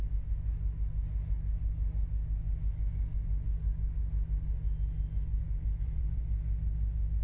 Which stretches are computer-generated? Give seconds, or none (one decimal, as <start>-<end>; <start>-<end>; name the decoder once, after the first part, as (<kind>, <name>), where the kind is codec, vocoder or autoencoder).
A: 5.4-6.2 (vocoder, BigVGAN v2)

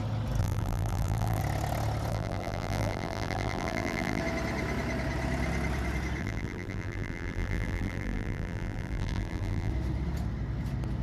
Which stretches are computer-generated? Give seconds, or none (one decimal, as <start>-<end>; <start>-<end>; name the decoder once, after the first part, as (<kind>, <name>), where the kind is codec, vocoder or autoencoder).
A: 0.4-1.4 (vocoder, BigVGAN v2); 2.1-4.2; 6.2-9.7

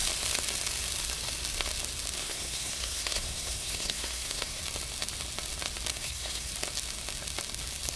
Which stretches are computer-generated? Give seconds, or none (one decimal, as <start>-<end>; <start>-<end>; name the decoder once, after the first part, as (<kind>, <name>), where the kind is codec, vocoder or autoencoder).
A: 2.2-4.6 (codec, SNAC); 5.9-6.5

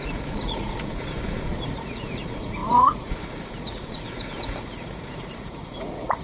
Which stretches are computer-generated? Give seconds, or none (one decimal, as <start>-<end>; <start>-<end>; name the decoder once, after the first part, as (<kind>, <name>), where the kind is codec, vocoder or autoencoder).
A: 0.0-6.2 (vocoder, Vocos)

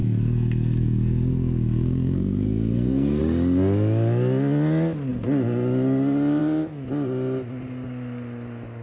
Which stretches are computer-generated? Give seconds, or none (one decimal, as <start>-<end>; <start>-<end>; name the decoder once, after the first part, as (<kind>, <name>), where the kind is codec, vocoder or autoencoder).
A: 0.0-3.2 (codec, SNAC)

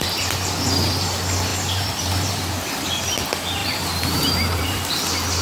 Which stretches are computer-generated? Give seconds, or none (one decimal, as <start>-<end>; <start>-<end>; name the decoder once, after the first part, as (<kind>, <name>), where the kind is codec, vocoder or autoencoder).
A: 1.5-2.4 (vocoder, BigVGAN v2); 3.6-4.9

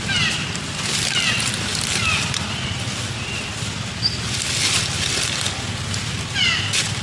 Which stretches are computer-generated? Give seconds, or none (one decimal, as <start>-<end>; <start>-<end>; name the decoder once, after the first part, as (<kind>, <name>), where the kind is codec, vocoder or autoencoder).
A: none